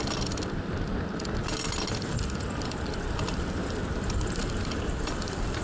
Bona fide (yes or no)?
no